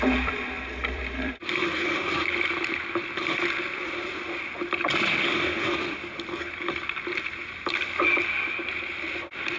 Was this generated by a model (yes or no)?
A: yes